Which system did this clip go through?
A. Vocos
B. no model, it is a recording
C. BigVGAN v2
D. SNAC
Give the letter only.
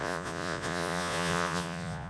A